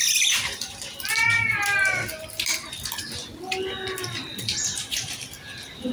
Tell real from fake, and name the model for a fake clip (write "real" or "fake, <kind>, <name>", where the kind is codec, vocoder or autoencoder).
real